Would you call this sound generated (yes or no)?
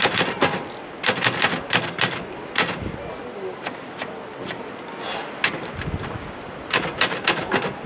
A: no